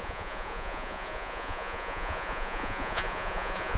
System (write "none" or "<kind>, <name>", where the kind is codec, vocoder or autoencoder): vocoder, Vocos